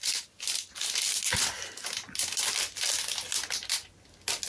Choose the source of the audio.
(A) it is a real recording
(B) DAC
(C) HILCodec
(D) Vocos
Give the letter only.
A